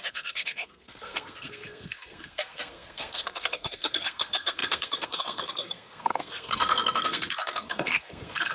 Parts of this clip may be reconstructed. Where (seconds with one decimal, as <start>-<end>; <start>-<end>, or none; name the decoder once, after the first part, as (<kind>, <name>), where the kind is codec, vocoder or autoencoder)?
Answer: 0.0-8.5 (codec, SNAC)